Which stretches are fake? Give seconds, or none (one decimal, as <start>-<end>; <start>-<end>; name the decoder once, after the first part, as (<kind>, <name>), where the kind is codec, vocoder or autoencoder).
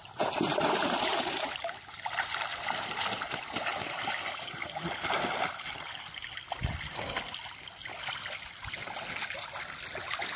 none